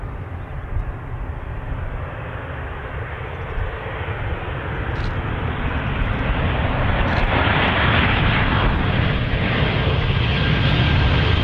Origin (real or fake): real